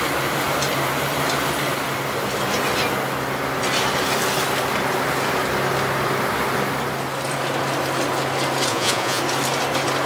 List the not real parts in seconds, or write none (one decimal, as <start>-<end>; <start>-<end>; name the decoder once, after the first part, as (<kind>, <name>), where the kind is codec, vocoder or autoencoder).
8.7-9.2 (vocoder, Vocos)